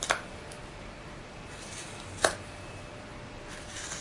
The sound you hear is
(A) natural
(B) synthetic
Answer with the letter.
B